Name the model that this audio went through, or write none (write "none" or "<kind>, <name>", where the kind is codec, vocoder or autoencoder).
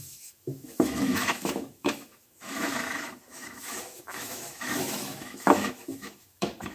autoencoder, DAC-VAE